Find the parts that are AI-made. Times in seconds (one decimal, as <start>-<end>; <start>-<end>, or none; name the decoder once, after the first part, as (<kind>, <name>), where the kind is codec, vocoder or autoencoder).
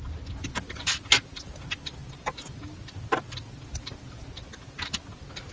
none